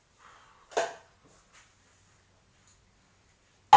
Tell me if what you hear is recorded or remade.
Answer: recorded